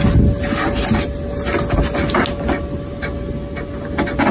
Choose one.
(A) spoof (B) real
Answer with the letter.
B